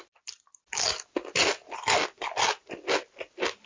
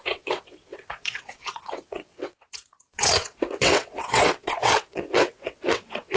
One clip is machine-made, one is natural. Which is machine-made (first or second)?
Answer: second